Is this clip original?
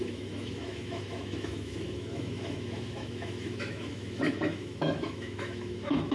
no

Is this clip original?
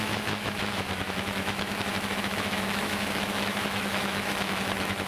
no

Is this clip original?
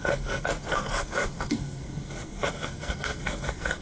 no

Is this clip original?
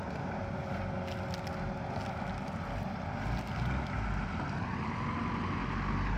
yes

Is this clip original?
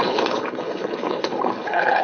no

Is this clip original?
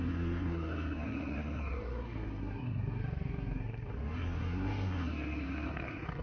no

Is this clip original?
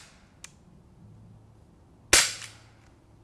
yes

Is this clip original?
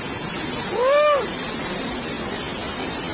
yes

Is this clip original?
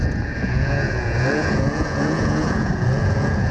no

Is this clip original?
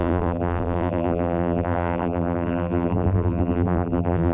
no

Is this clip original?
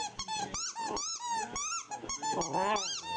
yes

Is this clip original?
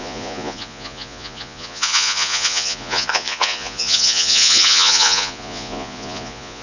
no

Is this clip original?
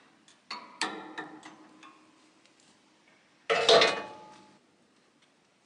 yes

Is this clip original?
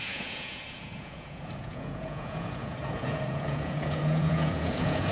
no